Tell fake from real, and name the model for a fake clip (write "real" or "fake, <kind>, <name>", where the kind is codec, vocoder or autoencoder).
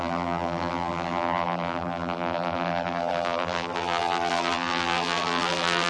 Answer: fake, vocoder, BigVGAN v2